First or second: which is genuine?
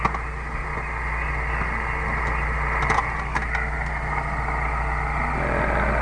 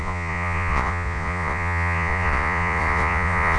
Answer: first